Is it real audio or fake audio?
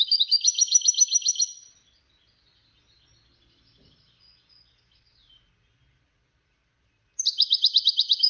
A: real